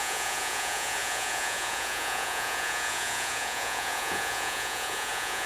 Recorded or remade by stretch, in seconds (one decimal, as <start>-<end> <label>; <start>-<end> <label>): 0.0-5.5 remade

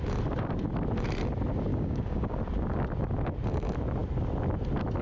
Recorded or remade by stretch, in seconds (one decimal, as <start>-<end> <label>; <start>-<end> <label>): 0.0-1.7 recorded; 1.7-2.4 remade; 2.4-5.0 recorded

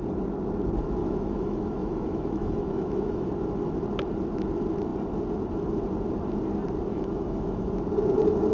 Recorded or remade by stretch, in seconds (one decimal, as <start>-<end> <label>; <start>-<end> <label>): 0.0-1.0 recorded; 1.0-3.3 remade; 3.3-6.9 recorded; 6.9-7.7 remade; 7.7-8.5 recorded

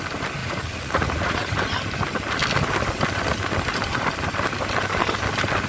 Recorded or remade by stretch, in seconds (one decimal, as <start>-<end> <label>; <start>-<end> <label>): 0.0-0.4 recorded; 0.4-1.5 remade; 1.5-5.7 recorded

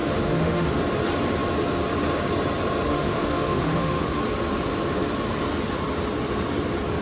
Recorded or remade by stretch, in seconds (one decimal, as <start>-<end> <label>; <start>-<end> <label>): 0.0-0.8 remade; 0.8-2.9 recorded; 2.9-4.2 remade; 4.2-7.0 recorded

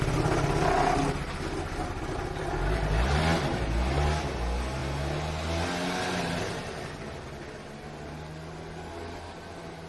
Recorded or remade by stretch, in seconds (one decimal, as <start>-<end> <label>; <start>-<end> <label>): 0.0-9.9 recorded